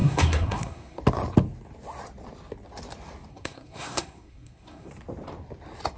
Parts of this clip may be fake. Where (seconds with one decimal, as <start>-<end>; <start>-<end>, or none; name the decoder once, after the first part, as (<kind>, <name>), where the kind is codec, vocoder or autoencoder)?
0.0-1.0 (codec, SNAC); 3.3-4.9